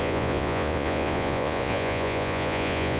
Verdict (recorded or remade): remade